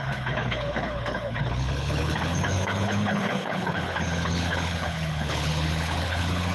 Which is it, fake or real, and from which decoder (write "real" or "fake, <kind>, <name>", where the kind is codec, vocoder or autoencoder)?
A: fake, codec, HILCodec